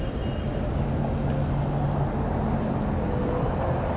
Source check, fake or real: real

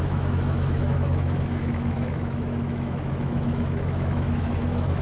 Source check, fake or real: fake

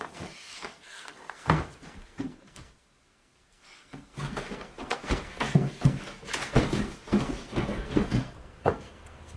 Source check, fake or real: fake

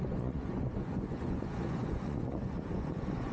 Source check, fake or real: fake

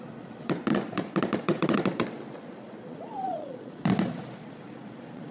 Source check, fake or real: fake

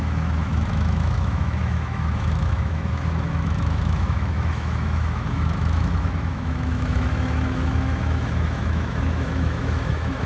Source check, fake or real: fake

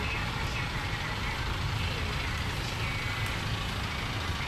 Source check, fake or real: real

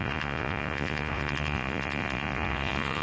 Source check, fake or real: fake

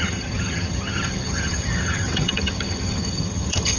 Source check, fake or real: fake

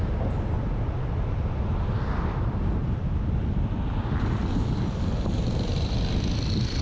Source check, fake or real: real